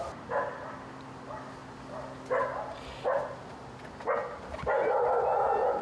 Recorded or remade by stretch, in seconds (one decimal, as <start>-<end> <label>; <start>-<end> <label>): 0.0-5.8 recorded